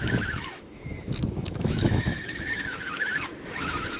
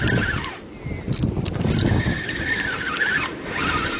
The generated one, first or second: first